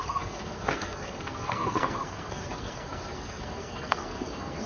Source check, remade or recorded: remade